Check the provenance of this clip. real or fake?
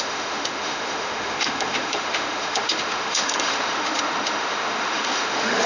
fake